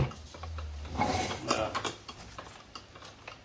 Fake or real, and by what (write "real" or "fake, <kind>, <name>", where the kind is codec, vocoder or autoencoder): real